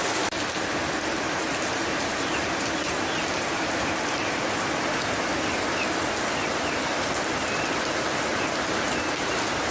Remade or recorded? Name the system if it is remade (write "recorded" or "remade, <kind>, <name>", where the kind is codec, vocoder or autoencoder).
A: recorded